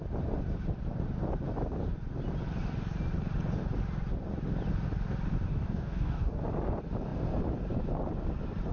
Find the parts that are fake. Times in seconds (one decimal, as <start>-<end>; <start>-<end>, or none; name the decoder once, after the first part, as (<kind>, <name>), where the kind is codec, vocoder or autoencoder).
5.5-6.4 (codec, DAC)

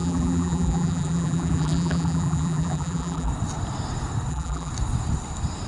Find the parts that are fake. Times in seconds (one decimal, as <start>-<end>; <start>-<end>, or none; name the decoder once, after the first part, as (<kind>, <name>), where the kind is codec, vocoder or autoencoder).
0.0-3.3 (vocoder, BigVGAN v2); 4.3-4.7

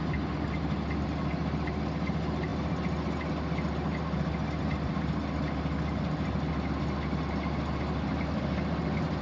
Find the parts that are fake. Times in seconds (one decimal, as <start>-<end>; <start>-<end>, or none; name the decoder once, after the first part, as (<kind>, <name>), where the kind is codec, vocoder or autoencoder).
none

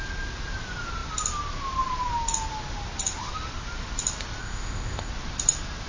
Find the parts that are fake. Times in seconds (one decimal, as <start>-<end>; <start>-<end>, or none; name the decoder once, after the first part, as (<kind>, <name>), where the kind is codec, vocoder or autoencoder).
4.4-5.1 (codec, ZipCodec)

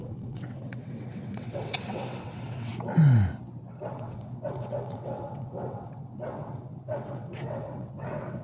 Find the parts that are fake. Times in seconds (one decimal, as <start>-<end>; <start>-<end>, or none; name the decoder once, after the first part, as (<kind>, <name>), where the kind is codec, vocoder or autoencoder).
0.0-2.7 (vocoder, WaveNeXt); 3.9-8.4

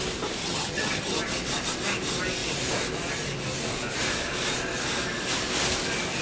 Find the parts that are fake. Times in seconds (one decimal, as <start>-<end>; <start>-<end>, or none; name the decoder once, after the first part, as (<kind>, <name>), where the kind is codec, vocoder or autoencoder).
0.4-1.2 (vocoder, HiFi-GAN)

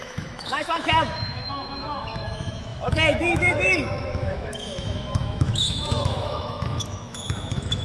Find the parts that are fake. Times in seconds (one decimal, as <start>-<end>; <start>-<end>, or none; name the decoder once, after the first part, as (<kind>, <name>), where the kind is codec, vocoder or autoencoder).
0.0-7.8 (autoencoder, DAC-VAE)